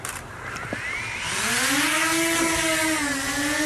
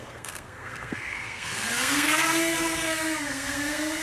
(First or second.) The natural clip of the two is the first